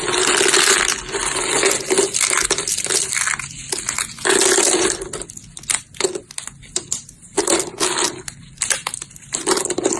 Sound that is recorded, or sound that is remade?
recorded